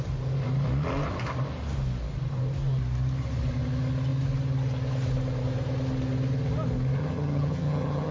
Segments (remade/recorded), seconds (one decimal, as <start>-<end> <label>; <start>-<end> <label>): 0.0-7.0 recorded; 7.0-8.1 remade